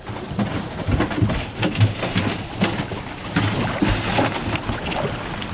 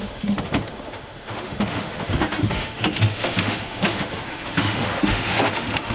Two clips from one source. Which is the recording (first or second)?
first